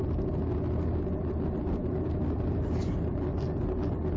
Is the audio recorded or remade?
recorded